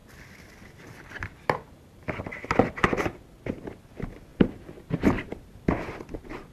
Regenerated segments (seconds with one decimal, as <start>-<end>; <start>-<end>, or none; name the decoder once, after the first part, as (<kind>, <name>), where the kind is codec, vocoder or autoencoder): none